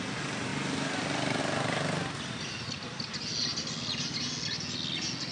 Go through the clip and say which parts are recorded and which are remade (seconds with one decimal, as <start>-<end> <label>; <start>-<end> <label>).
0.0-5.3 recorded